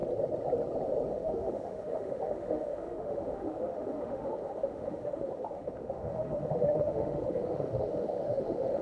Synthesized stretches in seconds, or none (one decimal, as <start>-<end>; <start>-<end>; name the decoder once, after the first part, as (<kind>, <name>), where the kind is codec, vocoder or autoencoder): 1.1-8.8 (autoencoder, DAC-VAE)